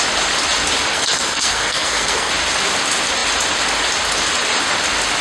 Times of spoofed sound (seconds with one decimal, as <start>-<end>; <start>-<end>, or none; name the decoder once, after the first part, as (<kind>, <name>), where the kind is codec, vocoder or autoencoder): 0.9-2.3 (codec, SNAC)